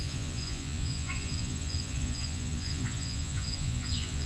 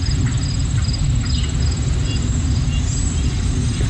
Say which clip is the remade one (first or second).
first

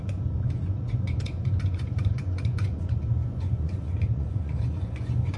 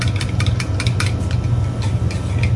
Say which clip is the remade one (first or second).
first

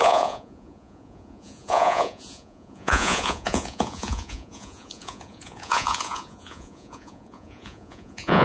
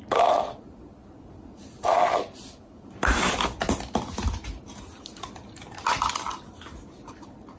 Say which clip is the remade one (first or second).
first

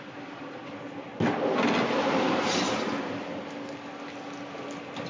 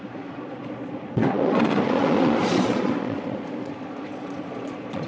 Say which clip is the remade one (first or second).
second